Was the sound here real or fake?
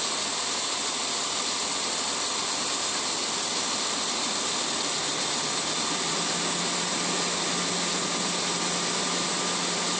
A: real